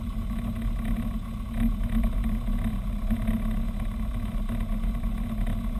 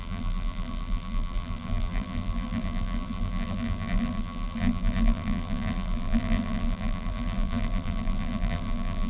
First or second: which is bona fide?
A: first